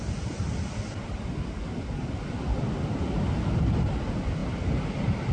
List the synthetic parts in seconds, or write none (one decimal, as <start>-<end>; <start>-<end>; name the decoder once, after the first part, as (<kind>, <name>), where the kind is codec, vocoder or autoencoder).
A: none